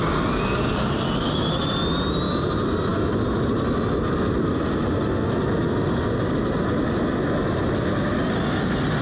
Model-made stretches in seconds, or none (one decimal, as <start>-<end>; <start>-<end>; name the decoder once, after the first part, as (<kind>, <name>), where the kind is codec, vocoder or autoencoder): none